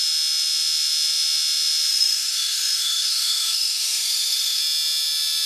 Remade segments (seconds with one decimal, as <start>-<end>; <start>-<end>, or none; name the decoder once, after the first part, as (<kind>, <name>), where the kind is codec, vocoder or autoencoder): 1.9-4.6 (autoencoder, DAC-VAE)